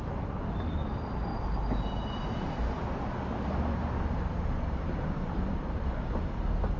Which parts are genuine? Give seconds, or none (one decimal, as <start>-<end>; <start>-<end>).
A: 0.0-1.3; 2.7-6.8